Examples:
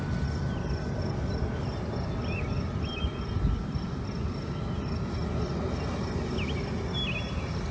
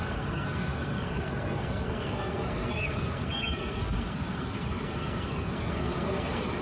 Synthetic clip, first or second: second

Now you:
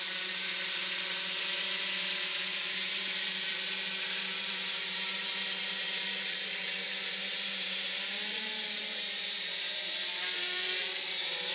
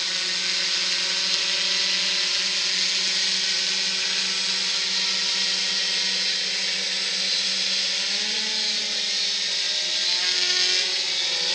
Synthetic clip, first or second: first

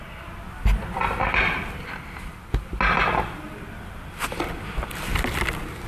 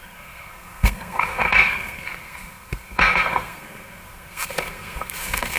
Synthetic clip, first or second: second